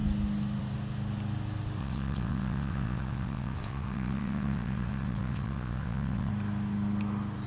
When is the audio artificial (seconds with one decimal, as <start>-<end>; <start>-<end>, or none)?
1.8-6.3